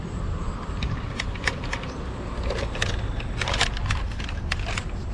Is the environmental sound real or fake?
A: real